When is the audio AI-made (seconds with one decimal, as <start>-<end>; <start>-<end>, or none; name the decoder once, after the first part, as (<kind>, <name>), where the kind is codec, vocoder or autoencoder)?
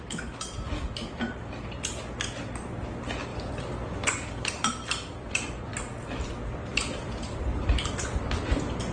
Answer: 3.3-5.6 (vocoder, BigVGAN v2); 6.7-7.9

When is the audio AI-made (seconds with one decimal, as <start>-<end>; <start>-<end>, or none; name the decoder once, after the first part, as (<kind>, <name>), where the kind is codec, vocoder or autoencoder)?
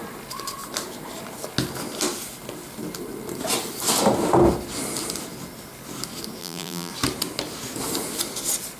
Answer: 6.4-6.9 (vocoder, BigVGAN v2)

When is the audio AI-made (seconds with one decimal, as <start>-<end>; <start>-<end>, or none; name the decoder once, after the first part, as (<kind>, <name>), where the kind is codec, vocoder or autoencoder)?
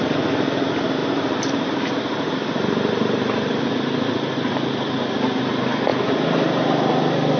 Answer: none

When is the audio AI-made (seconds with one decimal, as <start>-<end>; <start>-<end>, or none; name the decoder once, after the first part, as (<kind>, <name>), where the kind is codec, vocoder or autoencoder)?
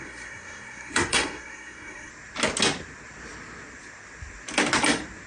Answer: 0.0-2.1 (codec, SNAC)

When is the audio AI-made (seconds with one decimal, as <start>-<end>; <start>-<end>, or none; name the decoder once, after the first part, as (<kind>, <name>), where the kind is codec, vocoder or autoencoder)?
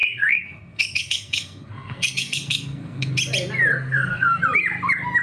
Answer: 0.0-3.1 (codec, SNAC); 3.7-4.4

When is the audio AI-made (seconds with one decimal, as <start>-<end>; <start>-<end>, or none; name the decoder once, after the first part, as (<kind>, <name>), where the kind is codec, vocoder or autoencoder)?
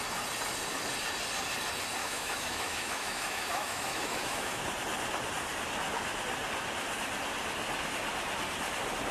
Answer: 2.0-4.6 (autoencoder, DAC-VAE)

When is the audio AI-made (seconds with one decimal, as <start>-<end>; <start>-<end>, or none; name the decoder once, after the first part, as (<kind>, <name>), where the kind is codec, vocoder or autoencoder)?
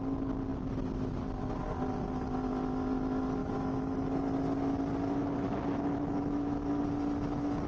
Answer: 3.4-4.2 (autoencoder, DAC-VAE); 5.2-6.8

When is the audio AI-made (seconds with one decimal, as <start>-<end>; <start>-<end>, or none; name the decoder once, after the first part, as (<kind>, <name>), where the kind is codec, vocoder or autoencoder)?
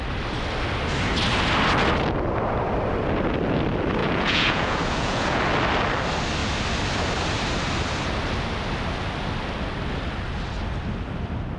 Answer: 4.0-5.4 (vocoder, Vocos)